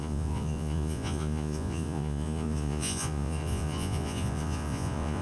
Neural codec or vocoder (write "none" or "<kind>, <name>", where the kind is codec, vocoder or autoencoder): vocoder, Vocos